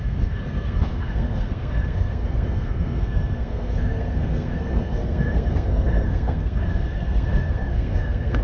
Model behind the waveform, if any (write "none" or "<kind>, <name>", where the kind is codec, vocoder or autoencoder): codec, SNAC